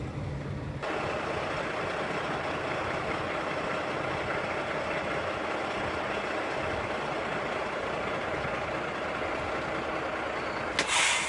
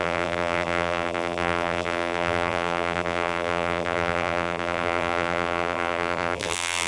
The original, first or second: first